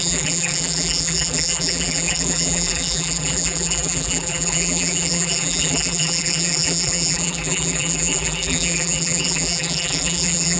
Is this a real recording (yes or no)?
no